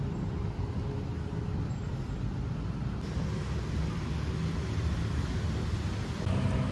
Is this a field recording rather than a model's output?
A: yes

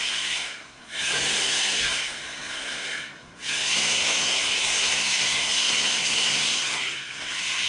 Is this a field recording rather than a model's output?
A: no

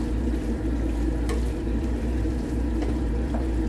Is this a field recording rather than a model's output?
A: no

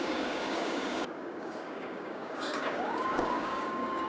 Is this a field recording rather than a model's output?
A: no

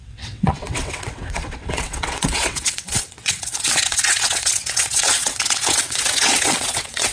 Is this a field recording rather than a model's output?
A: no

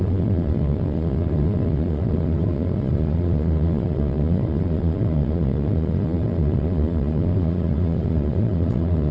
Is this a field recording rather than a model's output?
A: no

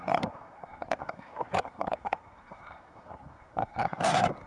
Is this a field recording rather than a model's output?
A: no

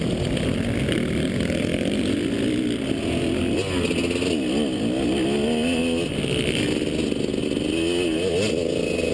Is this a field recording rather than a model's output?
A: yes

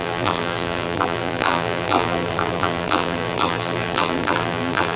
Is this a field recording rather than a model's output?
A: no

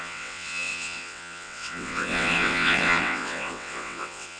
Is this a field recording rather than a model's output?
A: no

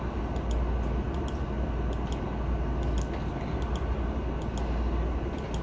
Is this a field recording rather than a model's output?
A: yes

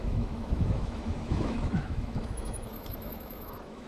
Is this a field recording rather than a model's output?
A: no